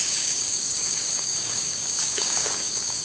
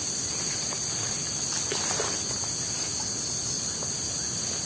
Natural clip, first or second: second